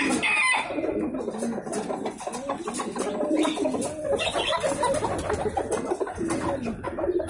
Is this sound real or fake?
real